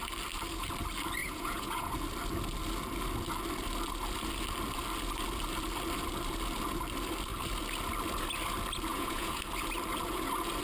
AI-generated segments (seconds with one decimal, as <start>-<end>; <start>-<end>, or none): 1.2-1.9; 8.9-9.4